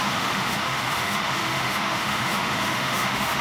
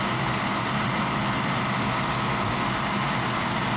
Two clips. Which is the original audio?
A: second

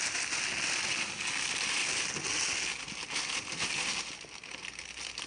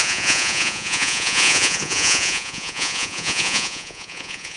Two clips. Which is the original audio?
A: first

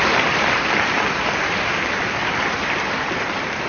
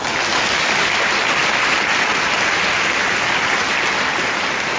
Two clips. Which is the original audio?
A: second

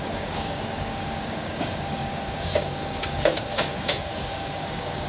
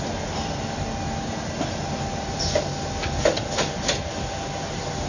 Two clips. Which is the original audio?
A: second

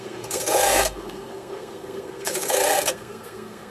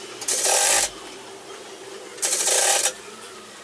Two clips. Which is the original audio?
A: second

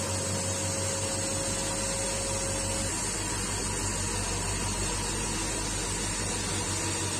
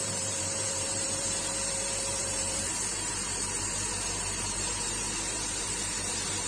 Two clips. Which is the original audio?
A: first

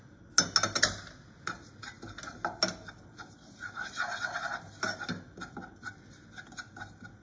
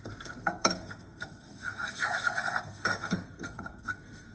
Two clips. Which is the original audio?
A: first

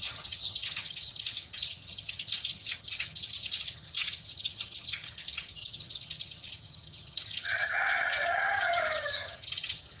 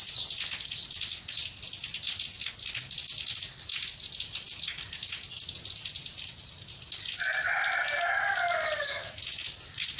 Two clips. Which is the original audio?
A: second